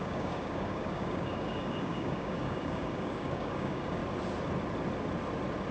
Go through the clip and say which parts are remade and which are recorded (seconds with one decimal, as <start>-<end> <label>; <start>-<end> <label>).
0.0-4.0 remade; 4.0-5.7 recorded

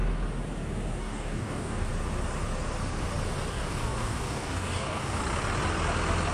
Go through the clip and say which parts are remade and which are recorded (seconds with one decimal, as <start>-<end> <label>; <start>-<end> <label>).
0.0-1.0 recorded; 1.0-1.9 remade; 1.9-3.5 recorded; 3.5-5.2 remade; 5.2-6.3 recorded

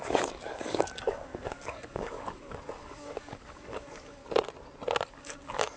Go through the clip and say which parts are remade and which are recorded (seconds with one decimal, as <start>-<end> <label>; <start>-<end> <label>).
0.0-4.2 remade; 4.2-5.1 recorded; 5.1-5.8 remade

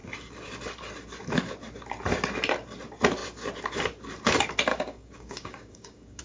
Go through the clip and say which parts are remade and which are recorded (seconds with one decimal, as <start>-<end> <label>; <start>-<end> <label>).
0.0-4.7 recorded; 4.7-6.2 remade

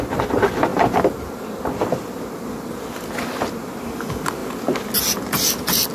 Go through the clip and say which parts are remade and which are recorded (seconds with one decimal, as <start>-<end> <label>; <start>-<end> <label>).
0.0-5.9 recorded

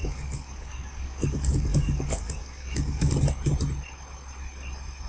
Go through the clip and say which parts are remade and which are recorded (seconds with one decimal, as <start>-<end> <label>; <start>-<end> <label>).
0.0-3.1 remade; 3.1-5.1 recorded